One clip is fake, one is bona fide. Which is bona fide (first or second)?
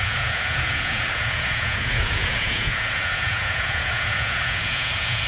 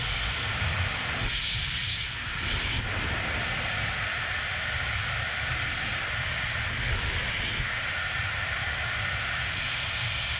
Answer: second